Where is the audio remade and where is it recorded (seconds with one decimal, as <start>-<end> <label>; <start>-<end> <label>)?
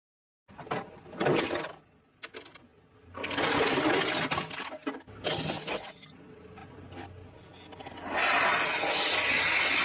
0.0-9.8 recorded